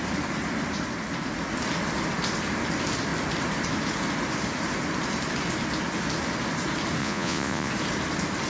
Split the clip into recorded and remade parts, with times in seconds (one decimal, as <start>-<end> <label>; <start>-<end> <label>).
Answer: 0.0-7.0 recorded; 7.0-7.7 remade; 7.7-8.5 recorded